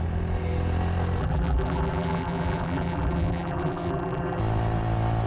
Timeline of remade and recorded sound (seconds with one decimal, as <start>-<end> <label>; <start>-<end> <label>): 0.0-1.2 recorded; 1.2-4.4 remade; 4.4-5.3 recorded